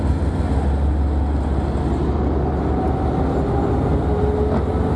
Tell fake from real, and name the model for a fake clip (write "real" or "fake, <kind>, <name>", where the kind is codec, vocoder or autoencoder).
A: real